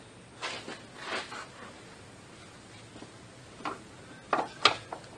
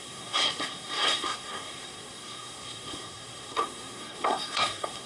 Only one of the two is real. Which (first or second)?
first